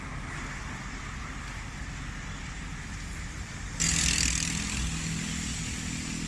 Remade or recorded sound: recorded